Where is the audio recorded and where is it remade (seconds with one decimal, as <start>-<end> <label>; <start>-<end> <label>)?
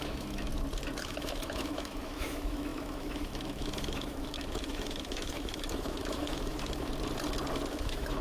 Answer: 0.0-0.5 remade; 0.5-1.0 recorded; 1.0-6.9 remade; 6.9-7.7 recorded; 7.7-8.2 remade